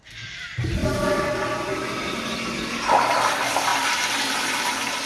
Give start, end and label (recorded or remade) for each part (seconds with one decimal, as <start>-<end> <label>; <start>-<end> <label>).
0.0-5.1 remade